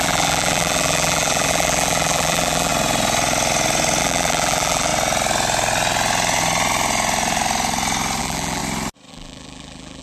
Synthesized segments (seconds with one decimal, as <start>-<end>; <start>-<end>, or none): 0.0-2.7; 4.0-4.9; 8.2-8.6; 9.1-10.0